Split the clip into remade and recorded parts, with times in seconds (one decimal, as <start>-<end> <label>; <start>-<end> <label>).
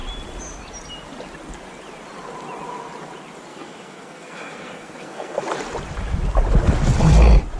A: 0.0-3.5 recorded; 3.5-5.4 remade; 5.4-7.6 recorded